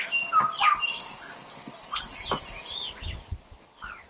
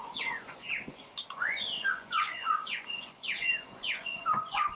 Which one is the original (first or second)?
first